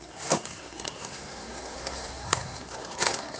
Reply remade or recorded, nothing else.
remade